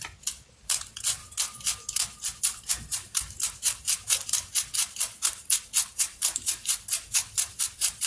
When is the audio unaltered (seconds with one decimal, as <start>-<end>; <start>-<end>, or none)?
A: 1.2-2.4